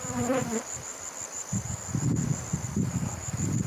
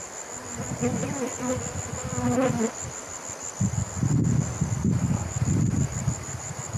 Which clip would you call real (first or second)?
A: second